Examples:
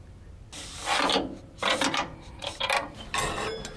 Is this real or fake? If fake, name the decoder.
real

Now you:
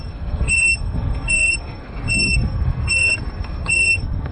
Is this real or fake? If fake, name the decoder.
fake, codec, SNAC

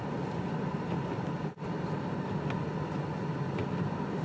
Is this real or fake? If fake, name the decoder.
real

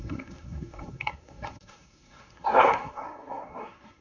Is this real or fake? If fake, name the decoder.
fake, codec, SNAC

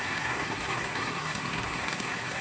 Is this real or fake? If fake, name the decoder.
fake, codec, SNAC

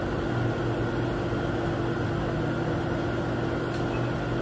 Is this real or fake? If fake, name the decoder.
real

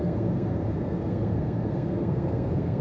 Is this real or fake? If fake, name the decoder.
fake, codec, SNAC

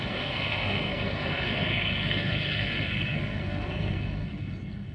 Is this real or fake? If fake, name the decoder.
fake, codec, SNAC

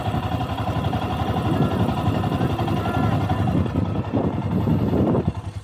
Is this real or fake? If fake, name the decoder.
real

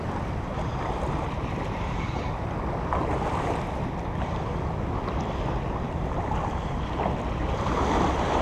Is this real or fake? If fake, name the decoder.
real